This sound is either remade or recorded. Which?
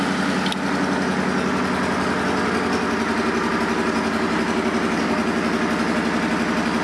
recorded